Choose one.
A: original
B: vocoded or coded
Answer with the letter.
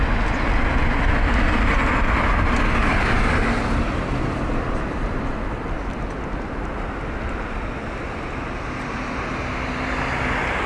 A